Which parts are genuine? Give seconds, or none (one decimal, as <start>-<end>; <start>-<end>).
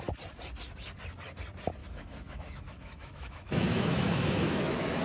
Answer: 0.0-1.8